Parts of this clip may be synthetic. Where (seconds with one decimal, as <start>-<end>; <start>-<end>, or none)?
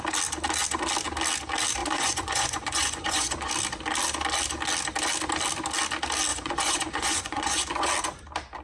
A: 1.8-3.5; 6.3-7.9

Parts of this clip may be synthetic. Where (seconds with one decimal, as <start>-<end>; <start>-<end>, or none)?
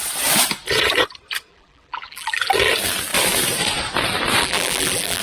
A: 1.5-2.5; 4.4-5.2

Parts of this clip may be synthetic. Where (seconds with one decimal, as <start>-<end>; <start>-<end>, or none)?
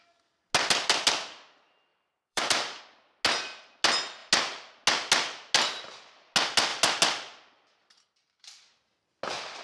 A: 1.9-2.8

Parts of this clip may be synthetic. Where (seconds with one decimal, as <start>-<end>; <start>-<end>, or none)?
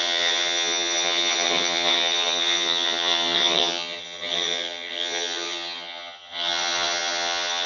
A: 0.0-7.7